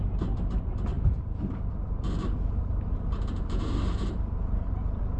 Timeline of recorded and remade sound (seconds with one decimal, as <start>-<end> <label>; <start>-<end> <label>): 0.0-0.9 recorded; 0.9-1.7 remade; 1.7-2.9 recorded; 2.9-4.7 remade; 4.7-5.2 recorded

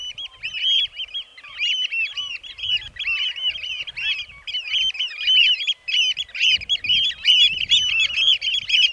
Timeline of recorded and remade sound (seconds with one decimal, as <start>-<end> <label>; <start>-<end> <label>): 0.0-8.9 recorded